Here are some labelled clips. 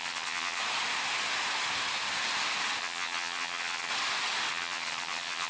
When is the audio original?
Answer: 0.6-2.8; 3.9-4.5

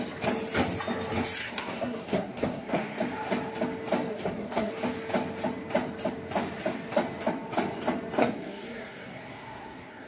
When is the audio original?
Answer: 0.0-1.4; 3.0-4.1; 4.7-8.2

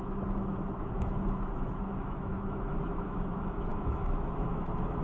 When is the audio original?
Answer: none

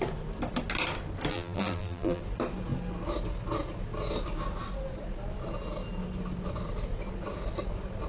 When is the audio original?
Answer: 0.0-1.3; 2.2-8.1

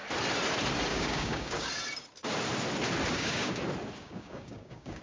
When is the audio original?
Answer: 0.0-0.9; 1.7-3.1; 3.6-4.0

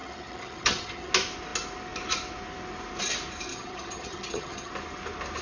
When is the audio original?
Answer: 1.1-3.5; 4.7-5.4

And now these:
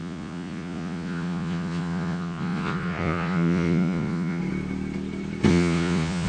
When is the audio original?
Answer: 4.4-5.5

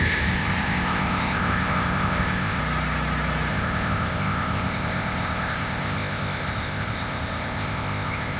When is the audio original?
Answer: 2.6-3.5